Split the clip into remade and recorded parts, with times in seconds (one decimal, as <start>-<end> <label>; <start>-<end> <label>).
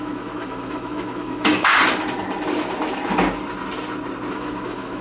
0.0-1.7 remade; 1.7-4.3 recorded; 4.3-5.0 remade